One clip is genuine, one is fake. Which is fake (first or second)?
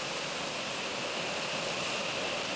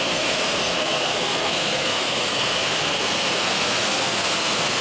second